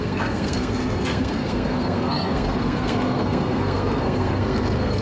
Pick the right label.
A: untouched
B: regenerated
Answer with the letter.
B